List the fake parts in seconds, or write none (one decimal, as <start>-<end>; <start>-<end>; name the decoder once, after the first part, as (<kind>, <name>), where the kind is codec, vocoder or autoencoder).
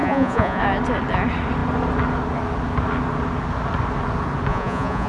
0.0-0.6 (vocoder, Vocos); 4.5-5.1